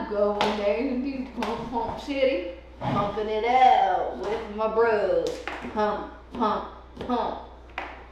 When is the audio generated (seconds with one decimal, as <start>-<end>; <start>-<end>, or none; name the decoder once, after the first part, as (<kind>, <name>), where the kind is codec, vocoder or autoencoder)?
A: 2.7-6.6 (autoencoder, DAC-VAE)